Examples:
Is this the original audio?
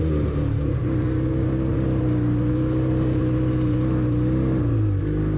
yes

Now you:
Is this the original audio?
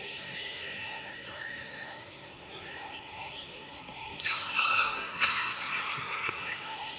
no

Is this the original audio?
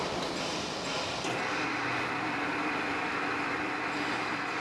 yes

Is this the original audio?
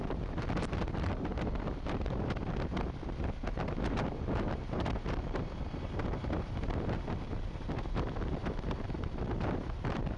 no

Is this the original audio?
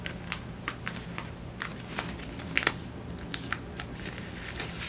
yes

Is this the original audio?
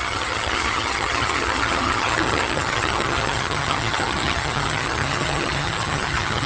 no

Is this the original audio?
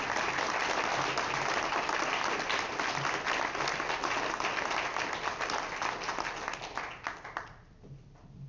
yes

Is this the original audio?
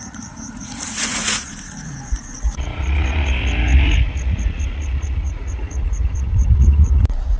no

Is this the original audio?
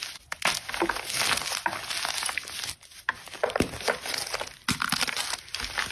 yes